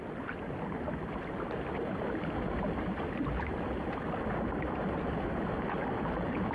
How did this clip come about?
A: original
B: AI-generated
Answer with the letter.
A